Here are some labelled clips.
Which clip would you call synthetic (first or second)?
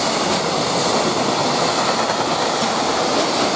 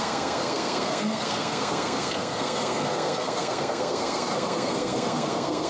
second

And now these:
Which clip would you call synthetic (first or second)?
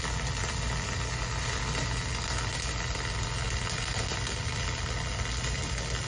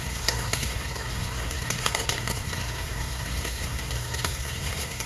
second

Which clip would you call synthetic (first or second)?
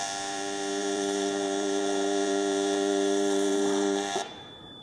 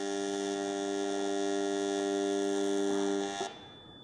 first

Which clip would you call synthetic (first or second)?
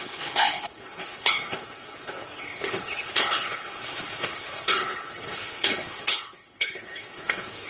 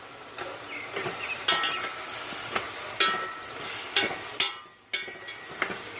first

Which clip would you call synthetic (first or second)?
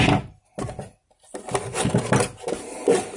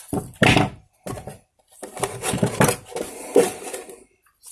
second